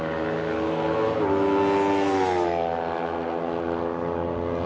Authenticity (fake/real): real